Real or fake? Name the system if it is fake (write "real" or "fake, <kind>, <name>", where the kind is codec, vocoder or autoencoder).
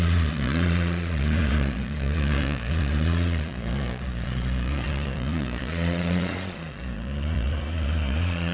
fake, vocoder, Vocos